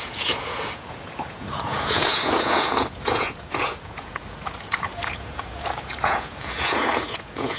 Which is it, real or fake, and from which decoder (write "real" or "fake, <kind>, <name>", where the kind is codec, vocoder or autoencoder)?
fake, vocoder, Vocos